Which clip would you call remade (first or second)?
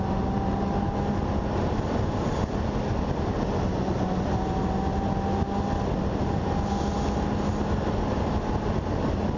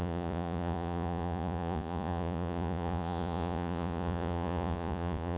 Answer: second